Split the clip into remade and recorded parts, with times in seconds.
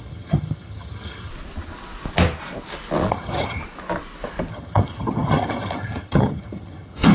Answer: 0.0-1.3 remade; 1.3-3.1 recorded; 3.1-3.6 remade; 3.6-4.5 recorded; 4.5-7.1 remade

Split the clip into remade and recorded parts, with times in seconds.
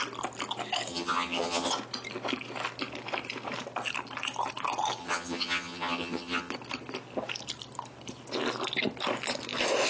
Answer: 0.0-0.9 recorded; 0.9-1.7 remade; 1.7-5.0 recorded; 5.0-6.5 remade; 6.5-9.9 recorded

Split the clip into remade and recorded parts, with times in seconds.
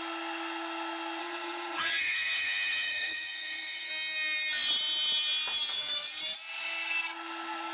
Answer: 0.0-1.2 recorded; 1.2-3.9 remade; 3.9-7.7 recorded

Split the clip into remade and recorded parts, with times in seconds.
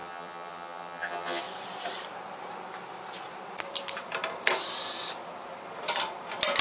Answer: 0.0-1.4 remade; 1.4-6.6 recorded